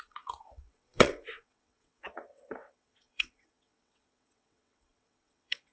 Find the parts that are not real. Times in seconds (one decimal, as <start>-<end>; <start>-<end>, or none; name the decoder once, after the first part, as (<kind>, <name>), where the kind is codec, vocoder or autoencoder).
0.0-5.7 (vocoder, WaveNeXt)